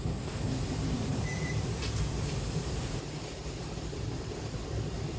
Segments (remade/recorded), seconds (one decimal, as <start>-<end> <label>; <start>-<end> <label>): 0.0-1.3 recorded; 1.3-4.4 remade; 4.4-5.2 recorded